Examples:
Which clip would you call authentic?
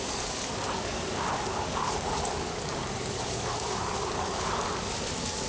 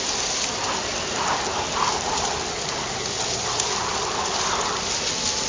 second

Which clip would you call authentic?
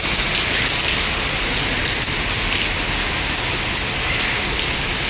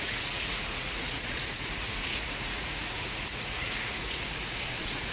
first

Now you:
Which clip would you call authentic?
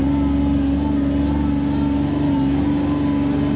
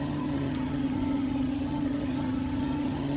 first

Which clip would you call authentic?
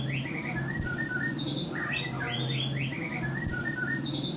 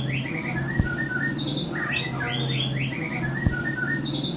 second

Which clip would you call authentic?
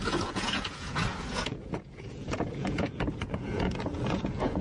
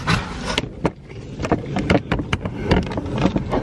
second